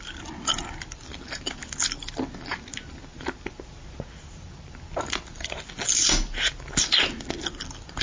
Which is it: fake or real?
real